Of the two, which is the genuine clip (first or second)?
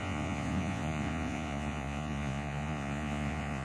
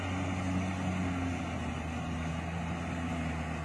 second